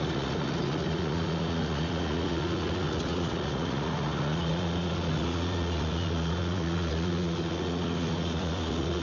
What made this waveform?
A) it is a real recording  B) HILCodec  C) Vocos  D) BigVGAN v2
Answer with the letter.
C